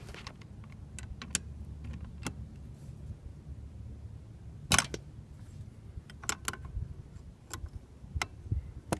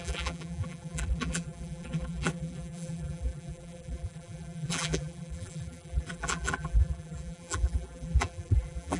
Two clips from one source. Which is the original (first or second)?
first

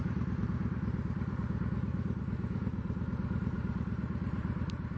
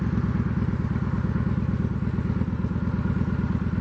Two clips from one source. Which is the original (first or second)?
second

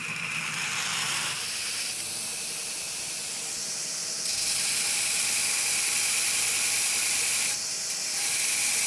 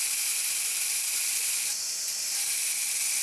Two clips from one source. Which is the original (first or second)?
second